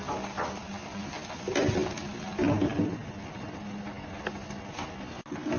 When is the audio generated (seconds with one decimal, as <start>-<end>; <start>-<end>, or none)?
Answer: none